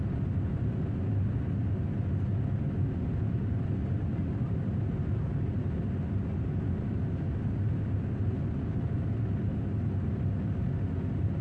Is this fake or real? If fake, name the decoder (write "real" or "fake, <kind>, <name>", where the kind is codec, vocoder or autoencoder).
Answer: real